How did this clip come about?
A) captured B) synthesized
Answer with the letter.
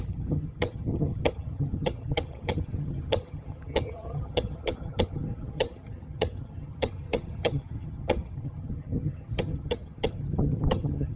B